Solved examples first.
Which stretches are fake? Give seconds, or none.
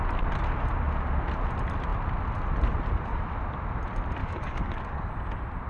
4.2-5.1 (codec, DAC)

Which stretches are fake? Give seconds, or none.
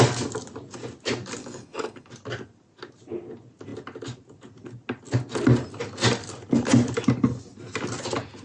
1.4-2.1 (codec, DAC)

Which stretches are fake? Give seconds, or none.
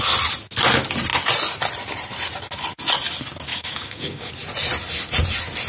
3.5-4.3 (codec, DAC)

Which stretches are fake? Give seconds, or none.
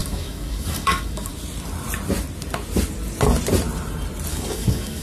0.0-1.3 (codec, DAC); 4.3-5.0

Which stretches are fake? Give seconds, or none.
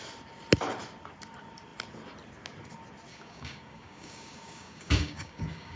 3.1-5.8 (codec, DAC)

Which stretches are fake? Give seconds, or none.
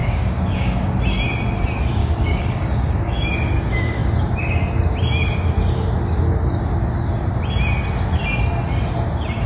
0.0-1.0 (codec, DAC); 2.0-3.5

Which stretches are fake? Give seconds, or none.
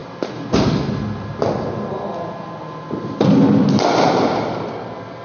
none